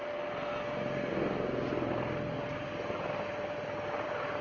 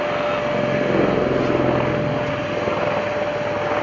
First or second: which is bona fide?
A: second